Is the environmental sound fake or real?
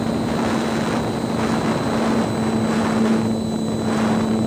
real